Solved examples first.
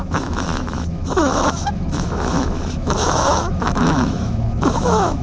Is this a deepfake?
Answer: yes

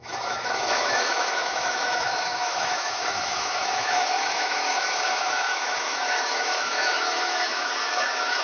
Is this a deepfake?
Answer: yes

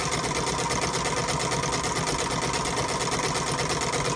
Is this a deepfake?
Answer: no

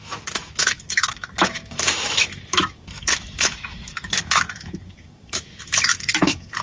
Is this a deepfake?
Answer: yes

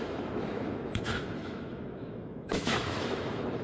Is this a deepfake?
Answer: yes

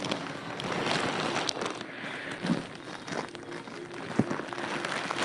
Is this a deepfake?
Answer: no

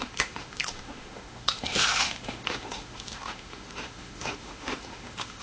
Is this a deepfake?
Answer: yes